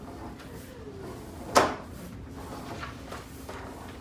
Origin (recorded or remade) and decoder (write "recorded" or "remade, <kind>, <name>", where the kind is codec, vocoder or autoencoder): recorded